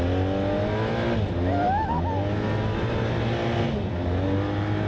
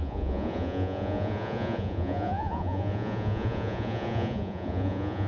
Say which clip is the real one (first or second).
first